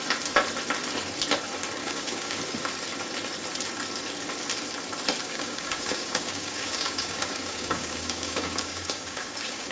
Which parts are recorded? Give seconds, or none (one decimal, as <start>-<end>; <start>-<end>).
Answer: 0.0-1.8; 2.4-5.2

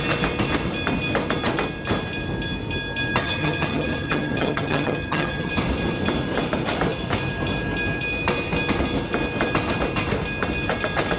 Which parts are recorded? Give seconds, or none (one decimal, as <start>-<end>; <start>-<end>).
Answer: 0.0-3.2; 5.5-11.2

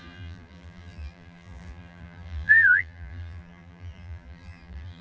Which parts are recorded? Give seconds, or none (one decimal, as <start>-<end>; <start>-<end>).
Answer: none

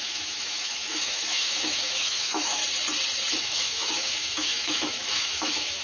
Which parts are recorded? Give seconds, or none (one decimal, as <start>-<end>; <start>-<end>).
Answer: 2.6-3.4

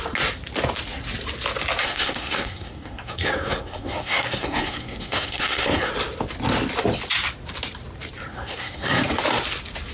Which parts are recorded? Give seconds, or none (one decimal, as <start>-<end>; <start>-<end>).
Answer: 0.0-1.8; 5.9-8.3; 9.0-9.9

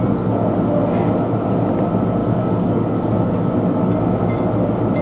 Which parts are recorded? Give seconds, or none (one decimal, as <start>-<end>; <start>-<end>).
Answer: 0.0-2.2; 3.5-5.0

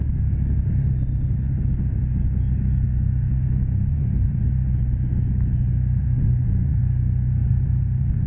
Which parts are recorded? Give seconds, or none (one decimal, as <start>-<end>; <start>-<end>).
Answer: 0.0-3.9; 4.5-6.0; 6.8-7.4